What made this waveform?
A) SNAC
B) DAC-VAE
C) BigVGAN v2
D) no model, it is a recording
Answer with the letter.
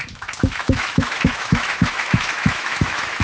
B